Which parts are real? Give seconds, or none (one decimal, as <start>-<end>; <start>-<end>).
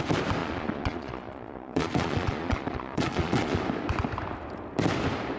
0.0-0.4; 3.6-5.4